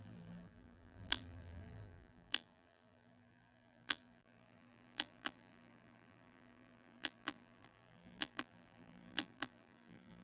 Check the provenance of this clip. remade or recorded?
remade